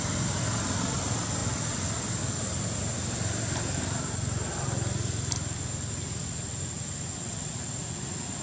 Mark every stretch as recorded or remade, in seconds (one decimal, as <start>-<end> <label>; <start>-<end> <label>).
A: 0.0-8.4 recorded